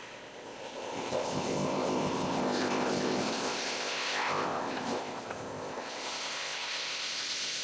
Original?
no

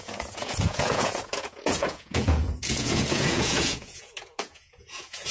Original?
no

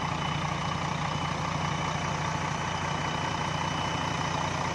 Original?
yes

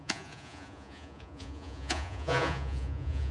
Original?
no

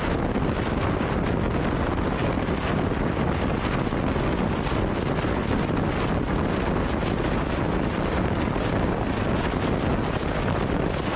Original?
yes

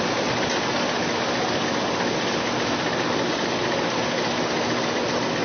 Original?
yes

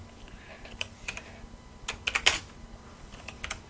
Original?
yes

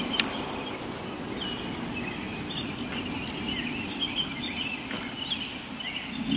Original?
yes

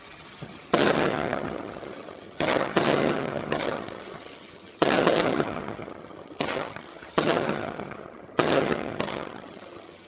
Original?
no